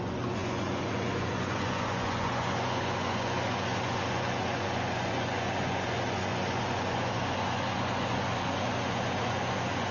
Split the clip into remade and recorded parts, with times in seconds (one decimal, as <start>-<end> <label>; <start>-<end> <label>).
0.0-9.9 remade